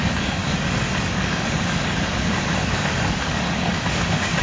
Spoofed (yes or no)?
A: yes